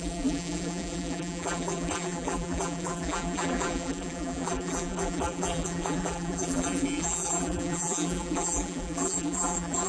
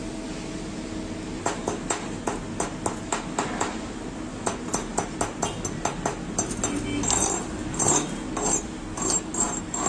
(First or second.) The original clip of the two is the second